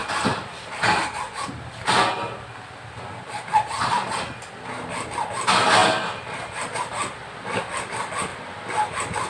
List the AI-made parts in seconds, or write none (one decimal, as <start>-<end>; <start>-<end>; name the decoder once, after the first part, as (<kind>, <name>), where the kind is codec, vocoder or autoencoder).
0.0-1.9 (vocoder, BigVGAN v2); 5.8-7.6